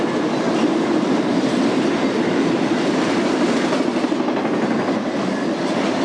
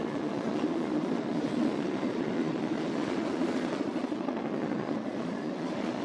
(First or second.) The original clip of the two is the first